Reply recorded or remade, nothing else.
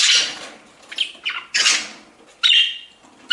recorded